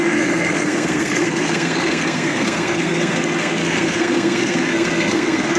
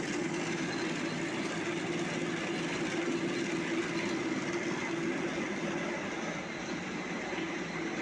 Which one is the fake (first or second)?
first